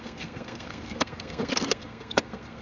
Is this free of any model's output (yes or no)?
no